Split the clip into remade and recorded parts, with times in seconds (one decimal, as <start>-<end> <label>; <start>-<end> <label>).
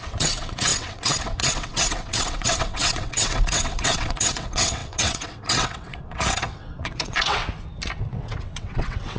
0.0-7.4 remade; 7.4-8.1 recorded; 8.1-9.2 remade